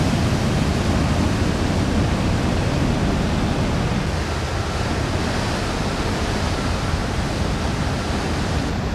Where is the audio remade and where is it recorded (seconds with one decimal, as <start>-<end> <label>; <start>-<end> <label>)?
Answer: 0.0-0.7 recorded; 0.7-3.1 remade; 3.1-7.0 recorded; 7.0-7.8 remade; 7.8-8.9 recorded